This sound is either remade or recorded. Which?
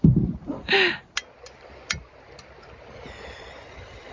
recorded